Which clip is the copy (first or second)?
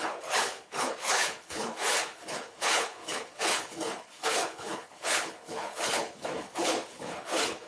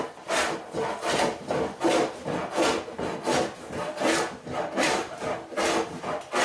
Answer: first